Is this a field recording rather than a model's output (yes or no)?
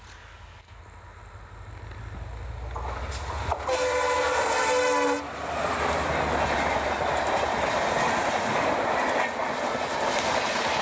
yes